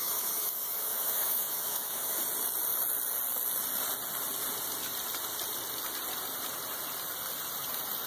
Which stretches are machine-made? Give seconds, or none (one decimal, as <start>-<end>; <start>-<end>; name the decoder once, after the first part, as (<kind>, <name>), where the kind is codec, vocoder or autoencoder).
0.0-2.2 (autoencoder, DAC-VAE)